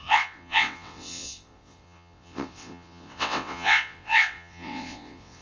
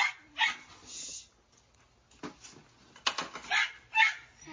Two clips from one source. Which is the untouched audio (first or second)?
second